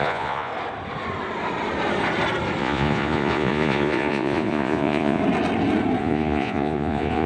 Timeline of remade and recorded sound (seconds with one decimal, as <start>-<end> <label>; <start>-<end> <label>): 0.0-0.5 remade; 0.5-2.6 recorded; 2.6-5.2 remade; 5.2-6.0 recorded; 6.0-7.3 remade